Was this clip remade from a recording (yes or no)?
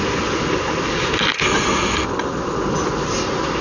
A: no